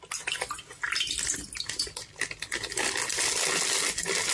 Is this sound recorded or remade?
recorded